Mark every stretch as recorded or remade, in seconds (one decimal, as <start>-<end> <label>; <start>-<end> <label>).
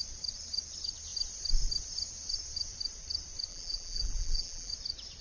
0.0-3.5 recorded; 3.5-4.7 remade; 4.7-5.2 recorded